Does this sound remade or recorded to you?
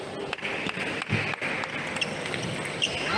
recorded